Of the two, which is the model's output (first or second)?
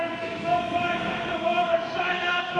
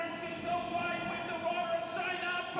first